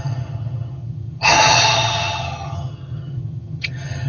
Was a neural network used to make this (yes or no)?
yes